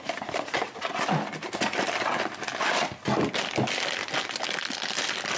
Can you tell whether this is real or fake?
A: real